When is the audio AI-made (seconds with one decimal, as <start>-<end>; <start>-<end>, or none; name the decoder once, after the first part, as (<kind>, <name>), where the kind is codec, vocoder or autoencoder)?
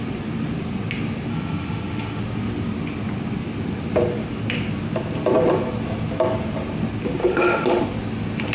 1.3-2.2 (autoencoder, DAC-VAE); 7.2-7.8